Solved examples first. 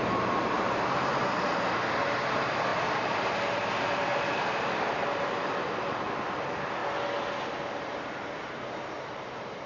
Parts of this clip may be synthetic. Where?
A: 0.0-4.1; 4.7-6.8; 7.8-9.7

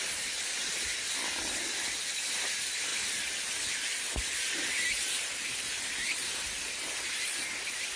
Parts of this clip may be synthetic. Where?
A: none

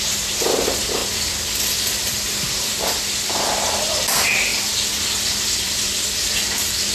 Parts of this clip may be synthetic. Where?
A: 1.0-3.0; 4.5-6.3

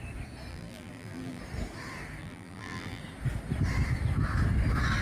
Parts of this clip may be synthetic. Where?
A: 0.5-1.4; 2.2-3.0

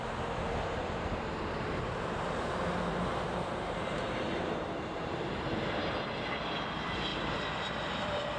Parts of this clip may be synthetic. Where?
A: 2.9-5.9; 7.1-8.4

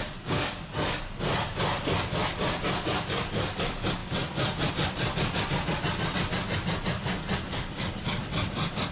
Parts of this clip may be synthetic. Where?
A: none

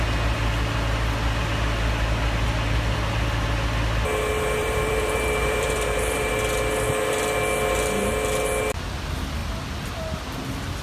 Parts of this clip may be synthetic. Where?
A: 4.6-6.3